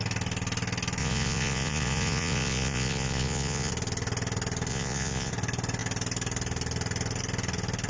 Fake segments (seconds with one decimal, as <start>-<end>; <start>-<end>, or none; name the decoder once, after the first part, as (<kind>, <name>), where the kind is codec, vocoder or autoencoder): 1.0-3.7 (vocoder, Vocos); 4.7-5.3